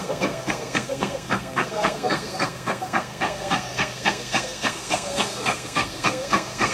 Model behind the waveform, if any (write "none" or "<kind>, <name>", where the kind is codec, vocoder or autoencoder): codec, SNAC